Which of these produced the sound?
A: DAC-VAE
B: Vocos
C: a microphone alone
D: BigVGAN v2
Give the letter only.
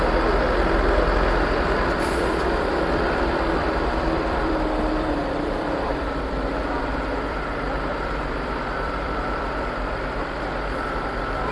D